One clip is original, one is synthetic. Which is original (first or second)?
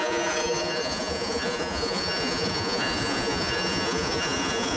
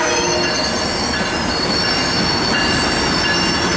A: second